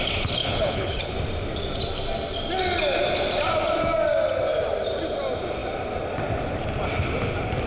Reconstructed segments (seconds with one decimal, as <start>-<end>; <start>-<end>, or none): 0.4-1.1